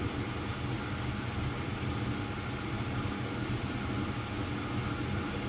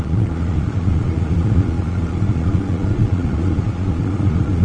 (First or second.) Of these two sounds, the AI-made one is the second